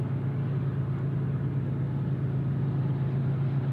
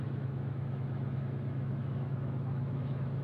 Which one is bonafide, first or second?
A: first